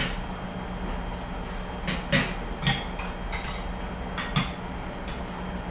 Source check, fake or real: real